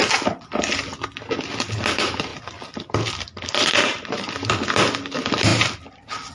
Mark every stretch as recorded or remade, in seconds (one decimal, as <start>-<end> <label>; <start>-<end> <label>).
0.0-3.8 recorded; 3.8-4.3 remade; 4.3-5.5 recorded; 5.5-6.3 remade